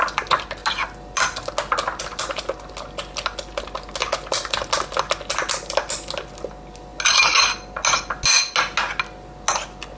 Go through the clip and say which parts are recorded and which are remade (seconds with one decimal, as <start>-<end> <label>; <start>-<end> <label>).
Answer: 0.0-10.0 recorded